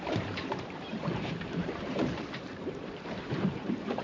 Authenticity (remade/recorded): remade